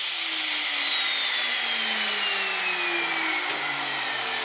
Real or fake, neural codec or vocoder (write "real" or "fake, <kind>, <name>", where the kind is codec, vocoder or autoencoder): real